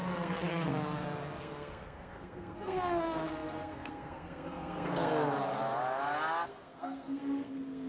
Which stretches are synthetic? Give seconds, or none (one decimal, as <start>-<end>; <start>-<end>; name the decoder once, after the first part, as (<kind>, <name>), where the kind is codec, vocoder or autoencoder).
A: 0.0-5.1 (codec, SNAC); 6.5-7.9